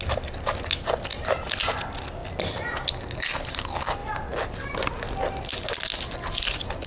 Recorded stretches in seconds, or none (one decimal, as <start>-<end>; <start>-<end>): 0.0-1.1; 1.8-2.2; 2.9-6.9